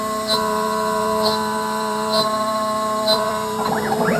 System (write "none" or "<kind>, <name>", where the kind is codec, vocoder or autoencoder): vocoder, BigVGAN v2